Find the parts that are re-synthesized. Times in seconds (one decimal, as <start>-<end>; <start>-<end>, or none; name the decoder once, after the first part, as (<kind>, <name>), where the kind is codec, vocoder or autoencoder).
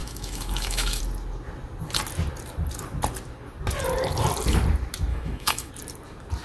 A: 0.0-1.0 (autoencoder, DAC-VAE); 5.1-5.7